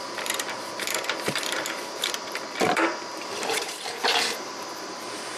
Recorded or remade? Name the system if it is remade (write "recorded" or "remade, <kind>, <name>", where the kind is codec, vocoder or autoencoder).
remade, vocoder, BigVGAN v2